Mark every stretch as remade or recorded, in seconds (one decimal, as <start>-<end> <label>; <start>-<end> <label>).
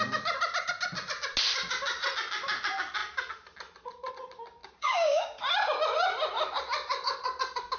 0.0-4.6 recorded; 4.6-5.4 remade; 5.4-7.8 recorded